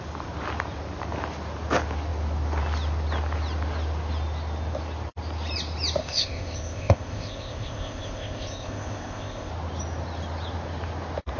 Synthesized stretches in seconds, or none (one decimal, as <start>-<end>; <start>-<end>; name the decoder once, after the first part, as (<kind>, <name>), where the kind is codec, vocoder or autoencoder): 6.0-9.5 (codec, ZipCodec)